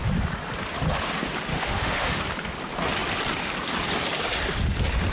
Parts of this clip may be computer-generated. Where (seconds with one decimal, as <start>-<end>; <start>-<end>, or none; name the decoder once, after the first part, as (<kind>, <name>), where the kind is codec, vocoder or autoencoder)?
1.5-2.2 (autoencoder, DAC-VAE)

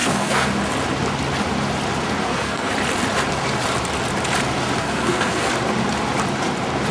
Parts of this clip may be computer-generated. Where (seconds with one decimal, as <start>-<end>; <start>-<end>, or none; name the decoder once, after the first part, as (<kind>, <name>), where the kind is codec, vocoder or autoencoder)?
0.0-0.5 (codec, SNAC); 2.2-2.7; 4.8-5.5

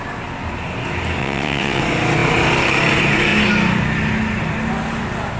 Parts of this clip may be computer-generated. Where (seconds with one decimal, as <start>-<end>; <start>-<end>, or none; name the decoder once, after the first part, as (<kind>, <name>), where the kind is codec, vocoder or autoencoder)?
1.2-1.8 (vocoder, WaveNeXt)

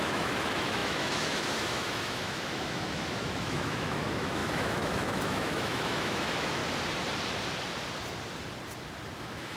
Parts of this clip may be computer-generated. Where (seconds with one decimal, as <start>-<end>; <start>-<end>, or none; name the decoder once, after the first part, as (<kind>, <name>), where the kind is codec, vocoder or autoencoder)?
0.0-6.6 (autoencoder, DAC-VAE); 9.2-9.6

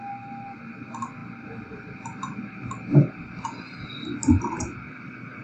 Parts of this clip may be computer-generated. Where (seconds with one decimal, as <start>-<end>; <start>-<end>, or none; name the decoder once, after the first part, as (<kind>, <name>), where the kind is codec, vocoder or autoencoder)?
none

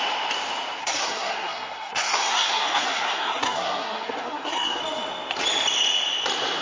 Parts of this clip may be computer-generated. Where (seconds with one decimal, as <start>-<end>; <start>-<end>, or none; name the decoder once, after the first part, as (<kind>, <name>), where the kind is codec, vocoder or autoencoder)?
0.8-4.8 (codec, SNAC)